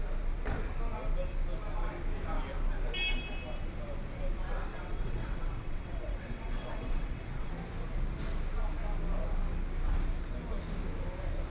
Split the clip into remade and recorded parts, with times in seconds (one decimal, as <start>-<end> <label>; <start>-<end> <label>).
0.0-4.7 recorded; 4.7-7.5 remade; 7.5-11.5 recorded